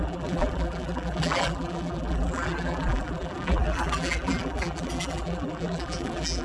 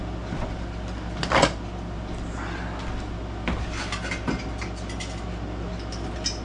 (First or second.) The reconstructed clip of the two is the first